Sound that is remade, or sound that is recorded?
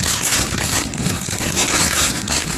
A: remade